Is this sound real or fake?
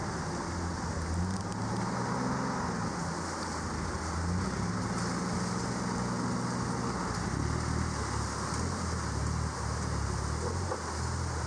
real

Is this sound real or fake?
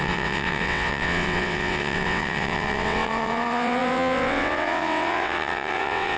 fake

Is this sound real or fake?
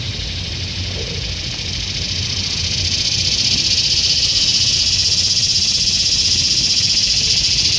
real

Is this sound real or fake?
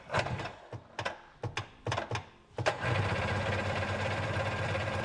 real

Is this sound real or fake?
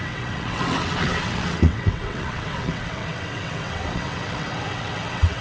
fake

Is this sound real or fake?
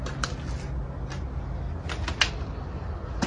real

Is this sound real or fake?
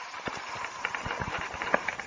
real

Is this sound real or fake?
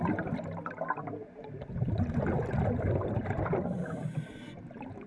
real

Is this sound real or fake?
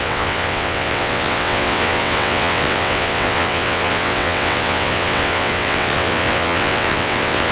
fake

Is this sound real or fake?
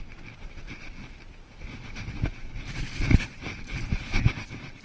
real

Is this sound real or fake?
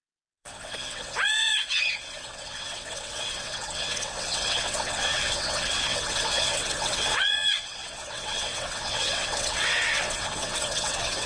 fake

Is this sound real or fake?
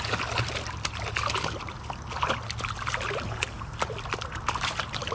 real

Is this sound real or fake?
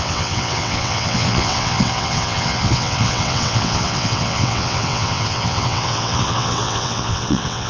fake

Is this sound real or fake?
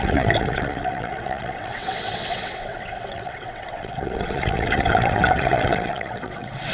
fake